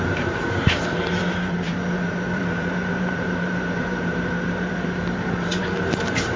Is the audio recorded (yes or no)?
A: no